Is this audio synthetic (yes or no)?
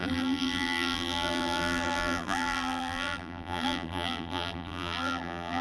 yes